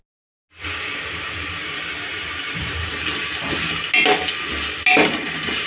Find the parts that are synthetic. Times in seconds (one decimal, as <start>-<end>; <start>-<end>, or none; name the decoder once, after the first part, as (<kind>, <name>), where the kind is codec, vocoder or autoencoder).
1.6-2.9 (vocoder, BigVGAN v2)

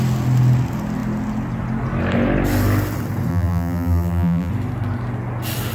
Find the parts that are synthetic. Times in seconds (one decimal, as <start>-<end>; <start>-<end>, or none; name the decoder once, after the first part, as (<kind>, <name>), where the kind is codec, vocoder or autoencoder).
3.3-4.5 (vocoder, BigVGAN v2)

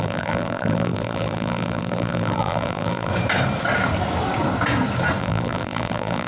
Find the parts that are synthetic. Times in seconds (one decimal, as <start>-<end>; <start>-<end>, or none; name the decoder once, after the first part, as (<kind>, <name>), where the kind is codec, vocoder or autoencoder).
0.0-3.1 (vocoder, BigVGAN v2); 5.2-6.3

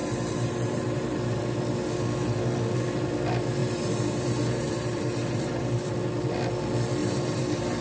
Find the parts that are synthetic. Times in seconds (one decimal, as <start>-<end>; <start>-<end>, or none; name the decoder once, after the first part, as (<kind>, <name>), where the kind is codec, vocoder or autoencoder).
0.0-1.4 (vocoder, BigVGAN v2); 3.6-5.9; 7.0-7.8

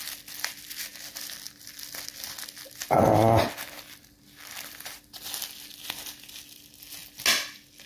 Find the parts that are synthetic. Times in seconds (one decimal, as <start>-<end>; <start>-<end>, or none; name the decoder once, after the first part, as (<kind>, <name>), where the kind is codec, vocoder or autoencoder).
none